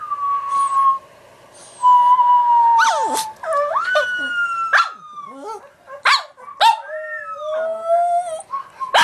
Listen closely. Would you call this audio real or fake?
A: real